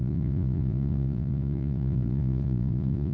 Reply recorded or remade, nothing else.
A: remade